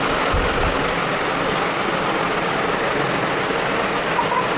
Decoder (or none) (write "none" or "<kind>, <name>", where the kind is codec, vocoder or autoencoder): none